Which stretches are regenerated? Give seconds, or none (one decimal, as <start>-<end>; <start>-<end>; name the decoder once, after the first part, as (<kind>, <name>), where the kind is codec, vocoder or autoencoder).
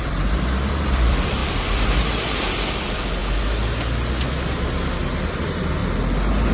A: 0.0-1.4 (vocoder, BigVGAN v2); 2.7-3.2; 5.3-5.8